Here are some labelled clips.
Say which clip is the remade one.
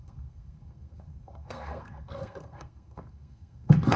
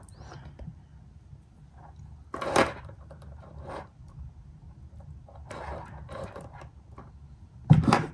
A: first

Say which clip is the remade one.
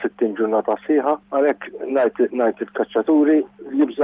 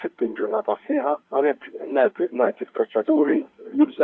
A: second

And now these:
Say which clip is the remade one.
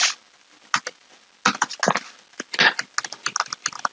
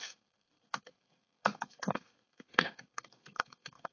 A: second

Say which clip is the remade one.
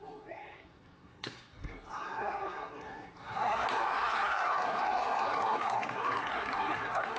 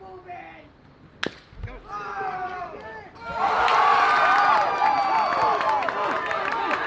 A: first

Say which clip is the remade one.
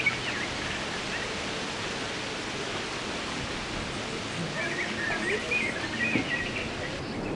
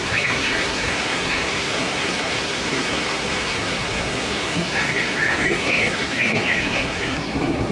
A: second